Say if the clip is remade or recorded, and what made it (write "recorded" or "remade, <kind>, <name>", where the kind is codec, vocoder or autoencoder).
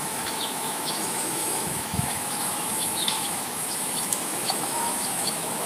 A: remade, autoencoder, DAC-VAE